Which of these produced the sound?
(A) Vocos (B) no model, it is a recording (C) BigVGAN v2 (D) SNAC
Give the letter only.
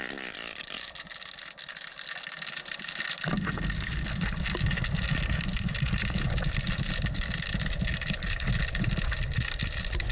B